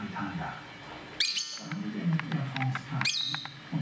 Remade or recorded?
recorded